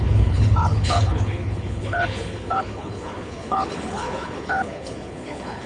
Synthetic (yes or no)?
yes